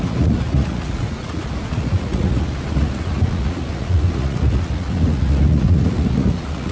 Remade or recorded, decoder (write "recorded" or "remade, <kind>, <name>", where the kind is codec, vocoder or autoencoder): remade, vocoder, Vocos